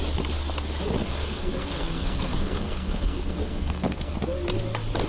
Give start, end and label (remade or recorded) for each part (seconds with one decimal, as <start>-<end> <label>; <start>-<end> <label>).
0.0-1.0 recorded; 1.0-4.1 remade; 4.1-5.1 recorded